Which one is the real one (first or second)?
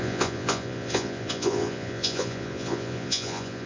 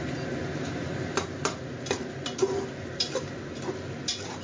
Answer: second